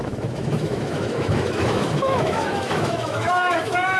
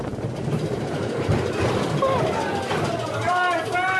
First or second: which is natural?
second